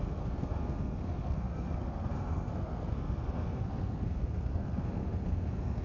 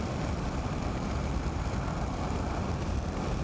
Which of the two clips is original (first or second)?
second